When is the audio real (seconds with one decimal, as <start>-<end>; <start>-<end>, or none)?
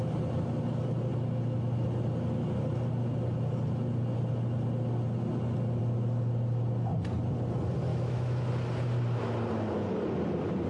0.0-7.9; 8.5-10.7